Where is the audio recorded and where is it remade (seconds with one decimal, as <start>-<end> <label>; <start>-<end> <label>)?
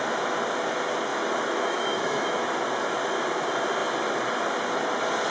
0.0-1.1 recorded; 1.1-2.5 remade; 2.5-5.3 recorded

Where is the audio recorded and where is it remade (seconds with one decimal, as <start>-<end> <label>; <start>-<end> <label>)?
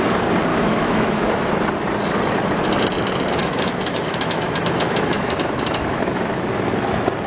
0.0-0.5 recorded; 0.5-1.5 remade; 1.5-3.4 recorded; 3.4-6.4 remade; 6.4-7.3 recorded